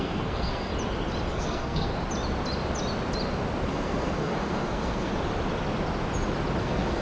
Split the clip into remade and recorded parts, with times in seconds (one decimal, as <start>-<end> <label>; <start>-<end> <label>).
0.0-0.7 remade; 0.7-1.3 recorded; 1.3-1.9 remade; 1.9-3.7 recorded; 3.7-5.1 remade; 5.1-6.6 recorded; 6.6-7.0 remade

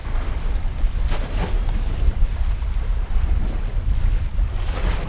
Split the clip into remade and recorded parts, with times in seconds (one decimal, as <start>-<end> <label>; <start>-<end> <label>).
0.0-5.1 recorded